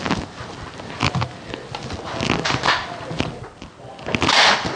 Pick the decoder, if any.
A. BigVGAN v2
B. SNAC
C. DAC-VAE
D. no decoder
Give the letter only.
D